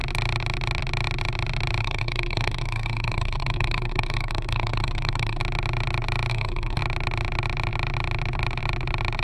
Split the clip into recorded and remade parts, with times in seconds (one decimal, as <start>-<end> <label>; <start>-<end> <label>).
0.0-1.8 recorded; 1.8-5.4 remade; 5.4-6.3 recorded; 6.3-6.8 remade; 6.8-9.2 recorded